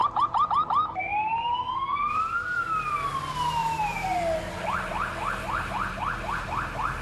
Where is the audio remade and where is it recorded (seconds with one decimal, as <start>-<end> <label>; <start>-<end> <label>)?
0.0-2.2 remade; 2.2-3.6 recorded; 3.6-4.2 remade; 4.2-7.0 recorded